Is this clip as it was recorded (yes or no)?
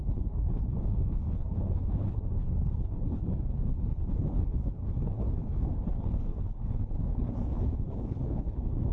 no